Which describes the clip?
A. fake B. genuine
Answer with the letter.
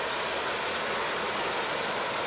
B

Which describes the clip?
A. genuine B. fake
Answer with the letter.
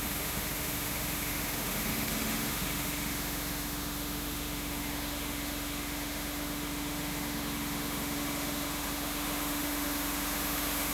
B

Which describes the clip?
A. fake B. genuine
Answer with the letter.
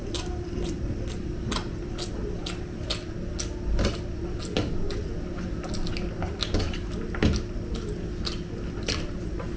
B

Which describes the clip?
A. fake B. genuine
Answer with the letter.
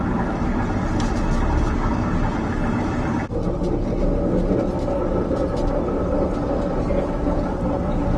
B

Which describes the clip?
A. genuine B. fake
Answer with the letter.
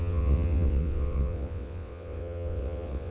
B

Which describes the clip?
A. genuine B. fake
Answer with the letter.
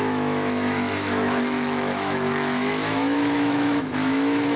B